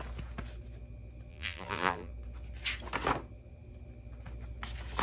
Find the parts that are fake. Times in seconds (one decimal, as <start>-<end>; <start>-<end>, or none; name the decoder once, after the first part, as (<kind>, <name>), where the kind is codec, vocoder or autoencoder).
1.3-2.1 (vocoder, BigVGAN v2)